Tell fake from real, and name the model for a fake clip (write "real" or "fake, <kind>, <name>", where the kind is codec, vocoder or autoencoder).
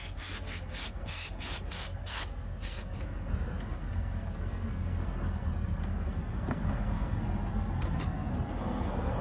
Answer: fake, codec, SNAC